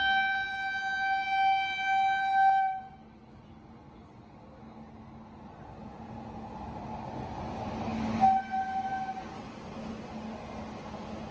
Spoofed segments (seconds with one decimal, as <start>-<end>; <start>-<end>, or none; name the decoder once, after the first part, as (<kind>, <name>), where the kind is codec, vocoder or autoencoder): 5.8-6.6 (vocoder, Vocos)

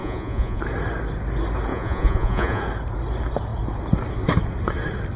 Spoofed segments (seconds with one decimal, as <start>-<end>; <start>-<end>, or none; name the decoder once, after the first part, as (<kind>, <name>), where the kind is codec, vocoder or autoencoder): 0.0-0.6 (vocoder, Vocos); 1.7-2.6

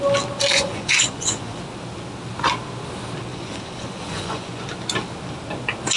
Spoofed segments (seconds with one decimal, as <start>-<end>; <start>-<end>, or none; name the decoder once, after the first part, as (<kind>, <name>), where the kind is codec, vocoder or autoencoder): 0.5-1.6 (vocoder, Vocos); 3.3-4.6

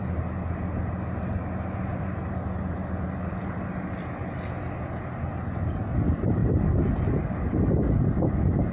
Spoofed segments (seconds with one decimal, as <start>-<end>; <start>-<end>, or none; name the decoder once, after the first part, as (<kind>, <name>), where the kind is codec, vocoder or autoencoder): none

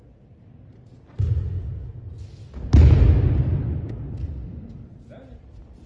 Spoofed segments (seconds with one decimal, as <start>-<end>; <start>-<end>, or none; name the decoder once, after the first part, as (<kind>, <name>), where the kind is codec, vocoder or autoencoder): none

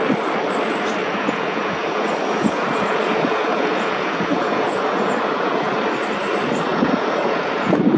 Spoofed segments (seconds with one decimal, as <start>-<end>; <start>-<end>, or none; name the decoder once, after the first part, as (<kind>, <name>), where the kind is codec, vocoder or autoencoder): 1.0-5.8 (vocoder, Vocos); 6.7-8.0